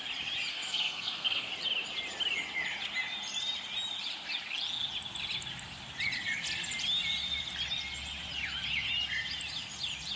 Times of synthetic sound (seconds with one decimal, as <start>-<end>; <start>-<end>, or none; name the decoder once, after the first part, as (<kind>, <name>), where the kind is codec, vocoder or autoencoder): 0.5-1.5 (codec, SNAC)